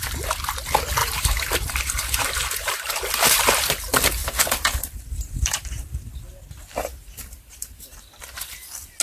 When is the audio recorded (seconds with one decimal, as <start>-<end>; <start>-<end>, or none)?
0.0-1.0; 2.9-4.2; 6.3-9.0